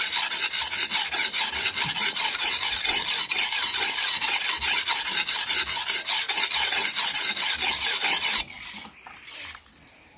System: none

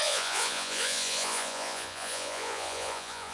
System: vocoder, Vocos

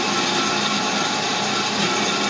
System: none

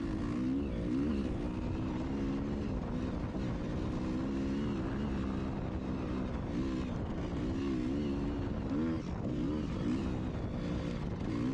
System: none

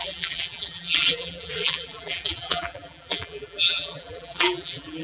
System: vocoder, BigVGAN v2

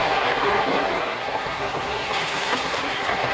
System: codec, SNAC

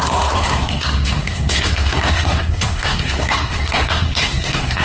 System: codec, SNAC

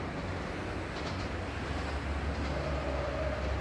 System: none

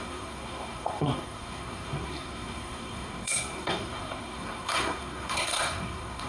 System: codec, SNAC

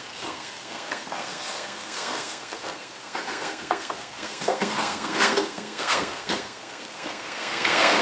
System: codec, SNAC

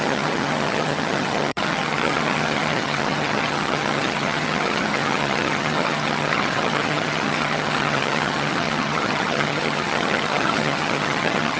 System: vocoder, HiFi-GAN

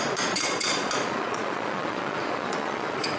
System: vocoder, Vocos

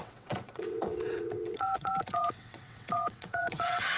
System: vocoder, WaveNeXt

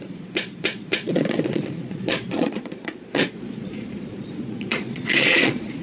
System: vocoder, Vocos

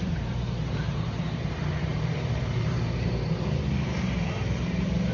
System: vocoder, BigVGAN v2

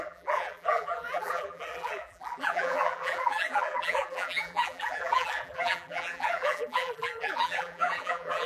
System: vocoder, BigVGAN v2